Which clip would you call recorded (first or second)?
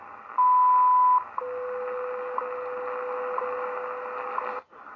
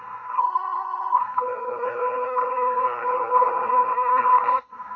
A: first